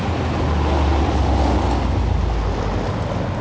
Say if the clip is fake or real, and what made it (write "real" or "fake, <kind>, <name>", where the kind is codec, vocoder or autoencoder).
real